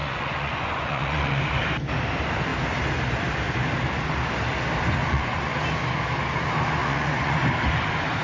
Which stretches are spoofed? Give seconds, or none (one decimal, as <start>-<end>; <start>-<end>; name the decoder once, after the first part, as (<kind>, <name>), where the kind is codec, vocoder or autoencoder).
0.0-1.4 (vocoder, Vocos); 5.0-5.5; 6.8-7.5